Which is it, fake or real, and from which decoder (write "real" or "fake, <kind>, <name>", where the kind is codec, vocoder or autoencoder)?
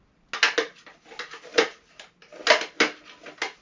real